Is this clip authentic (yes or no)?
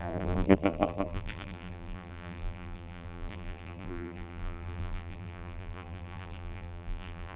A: no